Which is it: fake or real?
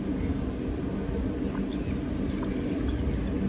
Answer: real